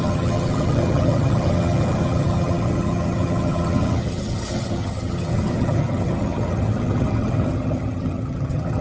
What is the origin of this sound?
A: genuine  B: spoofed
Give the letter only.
B